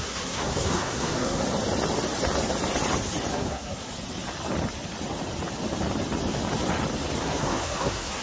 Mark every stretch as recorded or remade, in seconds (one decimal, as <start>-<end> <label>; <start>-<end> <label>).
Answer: 0.0-1.4 remade; 1.4-3.3 recorded; 3.3-3.9 remade; 3.9-7.2 recorded; 7.2-8.2 remade

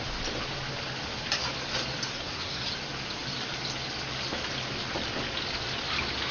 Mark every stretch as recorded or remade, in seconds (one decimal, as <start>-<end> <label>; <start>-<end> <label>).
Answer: 0.0-2.1 recorded; 2.1-2.7 remade; 2.7-6.3 recorded

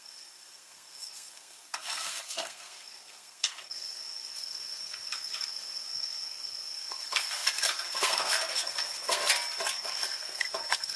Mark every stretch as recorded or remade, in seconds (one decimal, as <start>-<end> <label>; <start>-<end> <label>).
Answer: 0.0-9.2 remade; 9.2-9.7 recorded; 9.7-11.0 remade